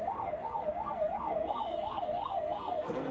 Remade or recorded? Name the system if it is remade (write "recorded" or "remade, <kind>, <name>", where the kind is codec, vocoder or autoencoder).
remade, codec, SNAC